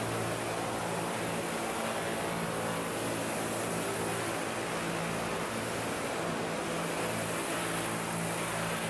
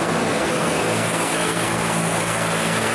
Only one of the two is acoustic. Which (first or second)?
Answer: first